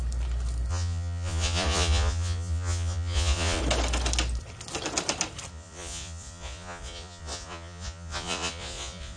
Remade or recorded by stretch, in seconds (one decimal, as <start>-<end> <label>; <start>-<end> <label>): 0.0-0.7 recorded; 0.7-3.6 remade; 3.6-5.5 recorded; 5.5-9.2 remade